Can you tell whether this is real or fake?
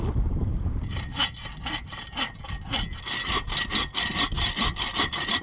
real